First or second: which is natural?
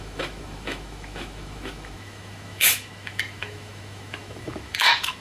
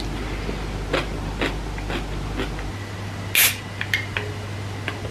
second